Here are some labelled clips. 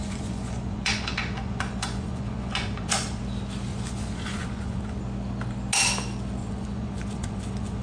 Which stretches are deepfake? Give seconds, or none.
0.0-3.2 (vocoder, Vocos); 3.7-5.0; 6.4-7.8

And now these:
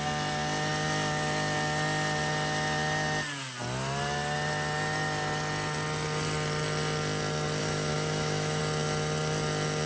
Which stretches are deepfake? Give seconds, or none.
7.6-8.6 (autoencoder, DAC-VAE)

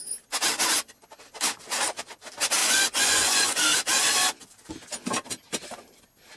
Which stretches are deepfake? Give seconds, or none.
2.6-3.6 (vocoder, Vocos)

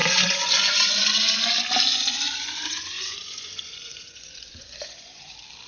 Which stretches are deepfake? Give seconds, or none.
0.0-1.5 (vocoder, Vocos); 1.9-5.3

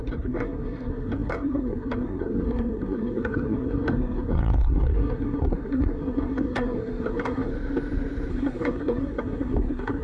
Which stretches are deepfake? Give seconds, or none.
0.0-7.5 (codec, SNAC); 8.3-10.0

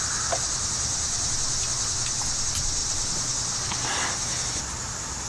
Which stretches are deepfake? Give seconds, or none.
2.8-3.5 (vocoder, BigVGAN v2)

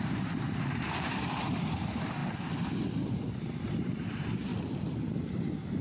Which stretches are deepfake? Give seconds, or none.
0.0-2.2 (vocoder, BigVGAN v2); 3.3-4.5